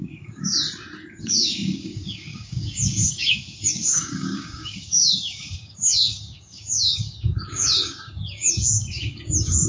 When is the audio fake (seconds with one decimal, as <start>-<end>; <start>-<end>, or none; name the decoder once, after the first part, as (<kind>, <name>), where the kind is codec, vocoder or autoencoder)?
0.0-0.5 (codec, DAC); 1.2-9.7